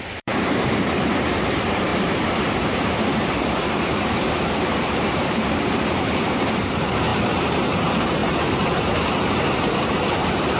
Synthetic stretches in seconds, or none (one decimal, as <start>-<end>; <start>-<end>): 0.0-8.2; 9.2-10.6